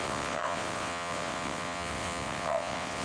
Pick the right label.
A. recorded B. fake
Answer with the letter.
B